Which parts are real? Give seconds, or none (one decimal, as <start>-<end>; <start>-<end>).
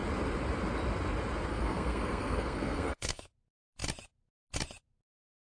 0.0-1.5; 3.3-5.5